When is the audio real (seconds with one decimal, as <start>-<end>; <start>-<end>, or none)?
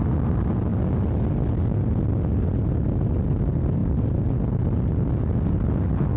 0.0-6.2